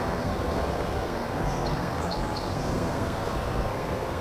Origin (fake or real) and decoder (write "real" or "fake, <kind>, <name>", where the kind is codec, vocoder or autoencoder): fake, codec, SNAC